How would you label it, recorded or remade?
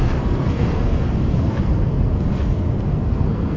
remade